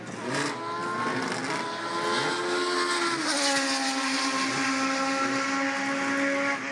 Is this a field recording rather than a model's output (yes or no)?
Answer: yes